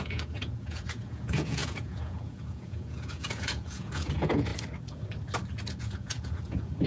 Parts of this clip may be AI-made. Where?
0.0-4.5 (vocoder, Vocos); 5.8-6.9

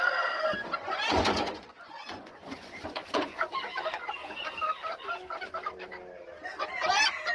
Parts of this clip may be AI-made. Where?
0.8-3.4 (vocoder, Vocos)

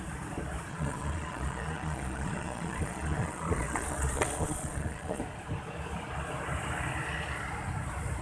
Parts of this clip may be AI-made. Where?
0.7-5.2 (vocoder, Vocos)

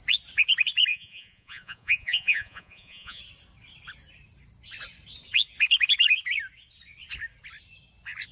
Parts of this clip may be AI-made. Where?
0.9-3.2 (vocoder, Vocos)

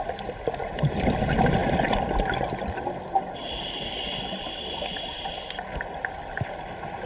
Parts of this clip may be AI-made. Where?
none

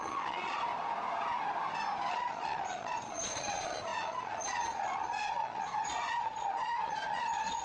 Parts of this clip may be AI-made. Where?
0.0-0.6 (vocoder, Vocos); 2.1-7.6

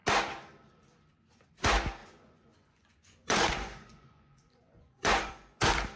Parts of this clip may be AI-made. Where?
2.0-5.6 (vocoder, Vocos)

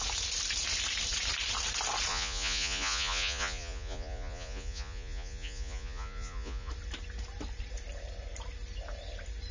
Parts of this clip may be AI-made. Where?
2.1-6.7 (vocoder, Vocos)